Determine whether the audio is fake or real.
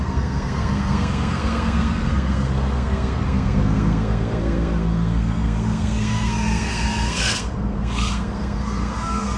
fake